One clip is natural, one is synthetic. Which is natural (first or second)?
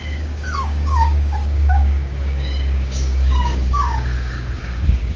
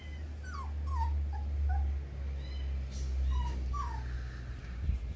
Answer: second